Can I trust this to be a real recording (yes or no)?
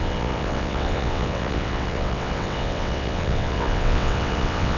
no